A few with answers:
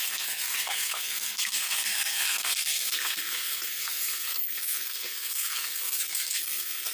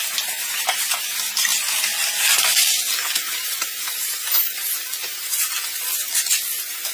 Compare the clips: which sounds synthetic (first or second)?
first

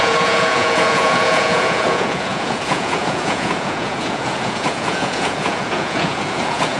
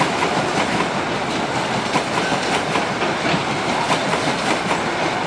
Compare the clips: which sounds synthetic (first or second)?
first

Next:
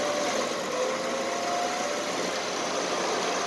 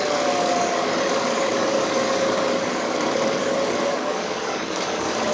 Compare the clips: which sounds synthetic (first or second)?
second